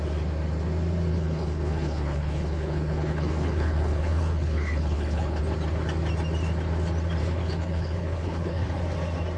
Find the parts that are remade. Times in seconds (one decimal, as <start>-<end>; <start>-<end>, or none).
1.1-5.4; 7.2-8.8